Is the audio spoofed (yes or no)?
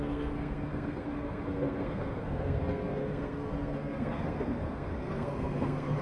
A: yes